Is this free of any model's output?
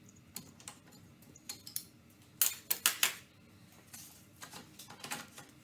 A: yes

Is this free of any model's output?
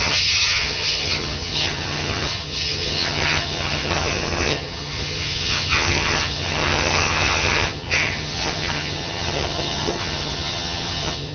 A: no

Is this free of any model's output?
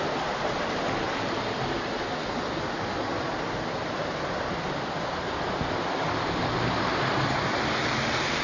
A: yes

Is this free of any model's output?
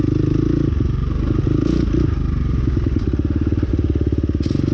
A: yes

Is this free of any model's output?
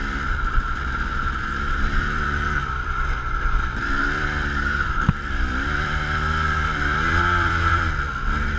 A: no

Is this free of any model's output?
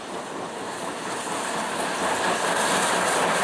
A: yes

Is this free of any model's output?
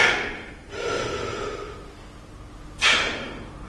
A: yes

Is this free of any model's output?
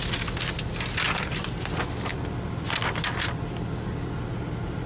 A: yes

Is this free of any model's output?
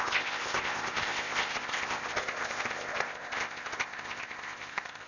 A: no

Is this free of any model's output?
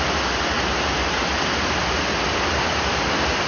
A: yes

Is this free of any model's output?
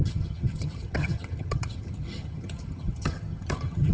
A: no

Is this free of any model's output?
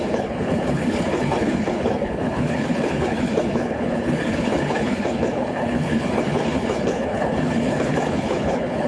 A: no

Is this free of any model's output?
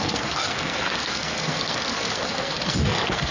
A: no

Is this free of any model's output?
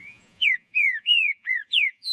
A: no